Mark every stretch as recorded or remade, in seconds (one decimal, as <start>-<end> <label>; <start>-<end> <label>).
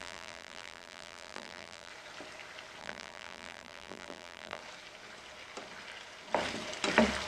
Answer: 0.0-1.9 remade; 1.9-2.8 recorded; 2.8-4.6 remade; 4.6-7.3 recorded